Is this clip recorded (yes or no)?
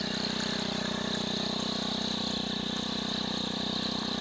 yes